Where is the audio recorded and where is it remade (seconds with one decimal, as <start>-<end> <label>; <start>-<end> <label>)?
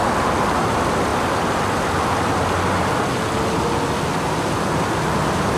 0.0-5.6 recorded